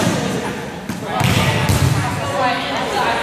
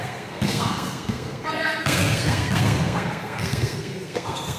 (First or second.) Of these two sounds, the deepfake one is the second